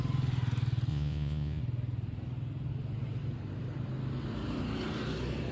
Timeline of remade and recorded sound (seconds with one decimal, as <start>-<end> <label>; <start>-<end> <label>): 0.0-0.9 recorded; 0.9-1.6 remade; 1.6-5.5 recorded